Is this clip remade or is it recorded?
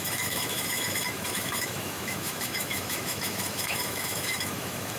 remade